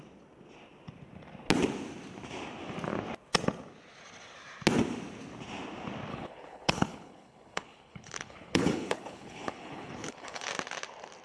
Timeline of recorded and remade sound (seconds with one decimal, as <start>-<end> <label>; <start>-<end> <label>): 0.0-6.1 recorded; 6.1-10.5 remade; 10.5-11.2 recorded